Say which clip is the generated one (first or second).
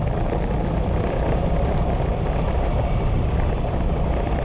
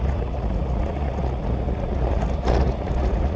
second